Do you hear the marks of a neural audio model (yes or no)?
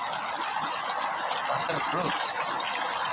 no